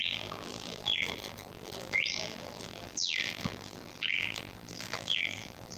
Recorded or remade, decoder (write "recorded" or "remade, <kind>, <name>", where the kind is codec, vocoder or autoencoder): remade, vocoder, BigVGAN v2